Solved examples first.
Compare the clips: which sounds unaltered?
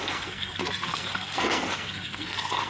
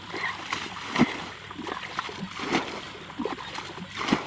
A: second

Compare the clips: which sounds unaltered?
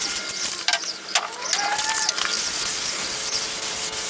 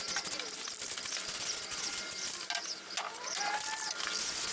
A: second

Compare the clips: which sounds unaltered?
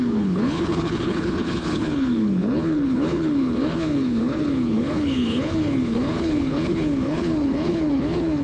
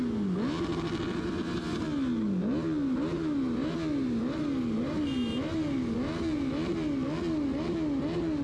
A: second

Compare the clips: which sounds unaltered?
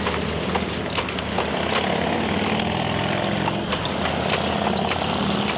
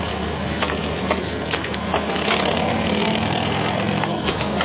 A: first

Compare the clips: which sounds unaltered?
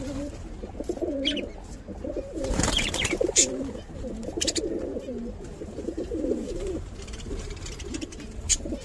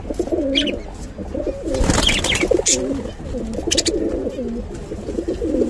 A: second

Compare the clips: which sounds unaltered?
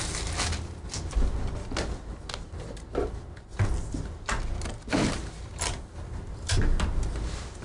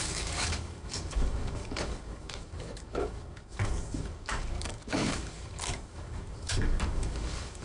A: first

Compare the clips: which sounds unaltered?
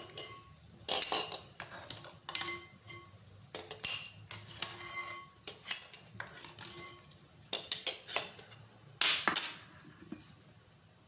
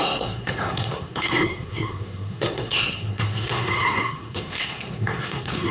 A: first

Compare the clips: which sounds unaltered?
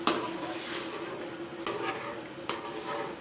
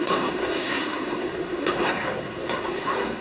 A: first